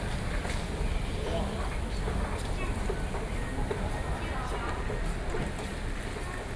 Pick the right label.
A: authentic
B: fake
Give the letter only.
A